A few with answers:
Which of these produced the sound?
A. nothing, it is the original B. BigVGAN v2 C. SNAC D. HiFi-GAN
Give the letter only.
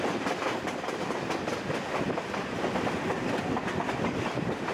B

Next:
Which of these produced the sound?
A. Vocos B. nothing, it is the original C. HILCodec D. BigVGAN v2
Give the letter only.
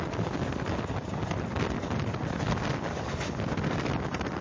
B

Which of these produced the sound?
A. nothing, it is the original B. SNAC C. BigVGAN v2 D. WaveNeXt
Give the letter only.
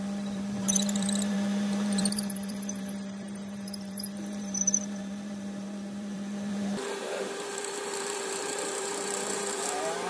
C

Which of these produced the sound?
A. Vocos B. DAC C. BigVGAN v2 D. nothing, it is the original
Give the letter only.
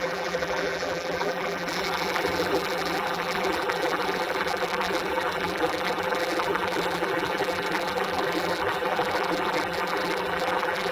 C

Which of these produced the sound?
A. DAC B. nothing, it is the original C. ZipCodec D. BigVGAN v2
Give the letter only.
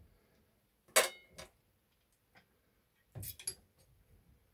B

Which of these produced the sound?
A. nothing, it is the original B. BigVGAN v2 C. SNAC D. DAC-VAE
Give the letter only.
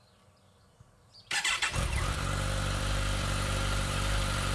B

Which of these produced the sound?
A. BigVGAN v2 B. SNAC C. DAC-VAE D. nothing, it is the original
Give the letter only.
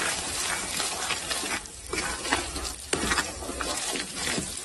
A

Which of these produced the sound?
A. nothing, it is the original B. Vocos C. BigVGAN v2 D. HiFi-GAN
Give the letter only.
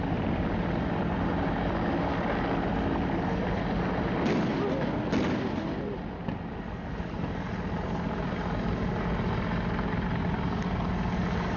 A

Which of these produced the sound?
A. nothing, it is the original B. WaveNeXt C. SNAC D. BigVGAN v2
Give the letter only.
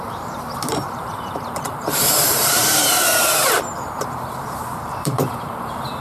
D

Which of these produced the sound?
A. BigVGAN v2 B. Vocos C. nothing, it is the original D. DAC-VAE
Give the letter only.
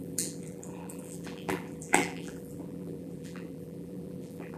A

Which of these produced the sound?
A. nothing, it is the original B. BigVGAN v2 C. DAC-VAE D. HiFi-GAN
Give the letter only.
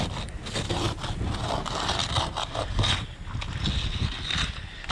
A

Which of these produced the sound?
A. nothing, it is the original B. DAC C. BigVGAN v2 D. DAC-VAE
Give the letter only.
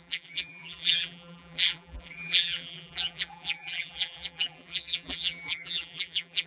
C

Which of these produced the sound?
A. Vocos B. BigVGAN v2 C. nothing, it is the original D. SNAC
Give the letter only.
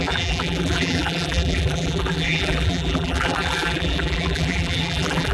B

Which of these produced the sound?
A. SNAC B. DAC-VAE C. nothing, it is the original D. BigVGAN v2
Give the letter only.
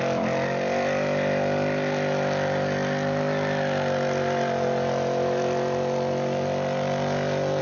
C